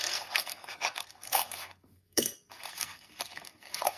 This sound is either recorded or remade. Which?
remade